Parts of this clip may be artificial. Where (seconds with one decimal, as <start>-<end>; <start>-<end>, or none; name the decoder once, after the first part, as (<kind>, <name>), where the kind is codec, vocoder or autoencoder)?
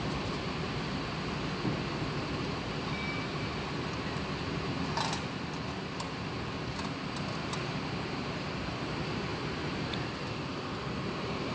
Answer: none